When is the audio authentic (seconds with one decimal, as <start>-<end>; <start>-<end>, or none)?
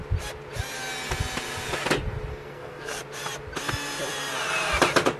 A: 0.0-2.3; 3.0-5.2